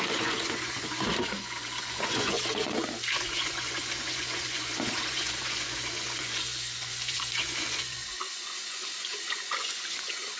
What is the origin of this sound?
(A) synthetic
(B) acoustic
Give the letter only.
A